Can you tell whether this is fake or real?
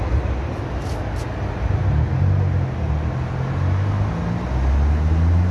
real